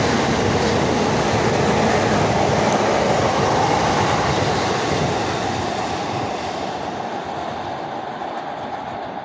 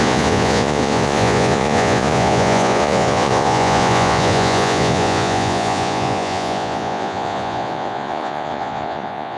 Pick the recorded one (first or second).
first